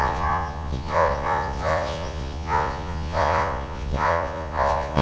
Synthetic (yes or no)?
yes